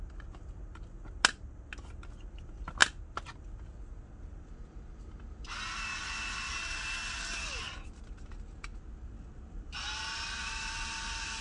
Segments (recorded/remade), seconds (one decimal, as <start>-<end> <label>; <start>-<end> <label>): 0.0-11.4 recorded